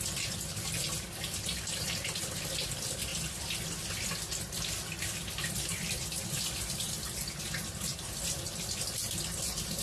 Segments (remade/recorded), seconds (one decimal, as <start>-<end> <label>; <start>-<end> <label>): 0.0-9.8 recorded